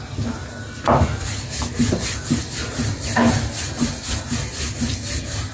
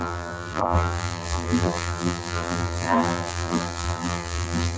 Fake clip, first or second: second